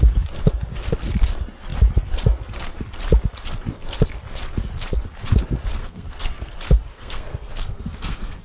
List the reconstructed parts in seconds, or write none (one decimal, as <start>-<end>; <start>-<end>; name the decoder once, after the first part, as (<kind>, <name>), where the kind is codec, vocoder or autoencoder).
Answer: 5.8-6.5 (codec, SNAC); 6.9-8.4